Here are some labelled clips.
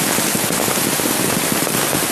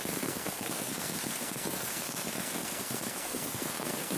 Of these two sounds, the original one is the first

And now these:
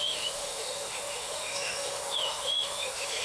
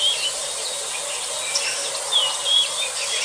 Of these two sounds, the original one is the second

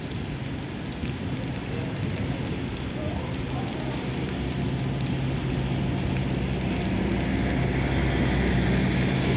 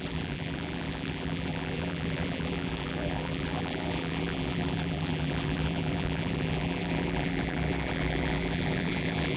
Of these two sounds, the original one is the first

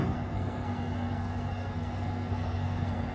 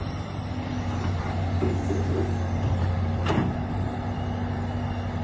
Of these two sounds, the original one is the second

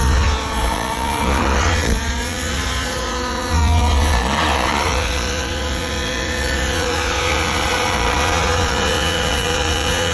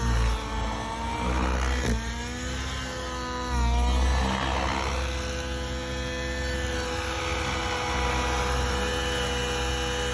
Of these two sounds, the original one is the second